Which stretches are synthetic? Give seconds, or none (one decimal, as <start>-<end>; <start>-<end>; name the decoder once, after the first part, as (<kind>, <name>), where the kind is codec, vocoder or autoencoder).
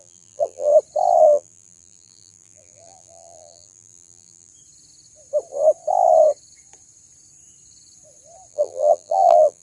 0.0-0.7 (vocoder, BigVGAN v2); 1.2-4.5; 8.5-9.6